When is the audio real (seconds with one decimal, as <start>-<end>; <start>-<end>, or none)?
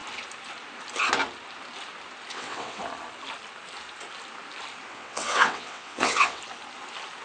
0.0-2.3; 2.8-4.9; 6.4-7.2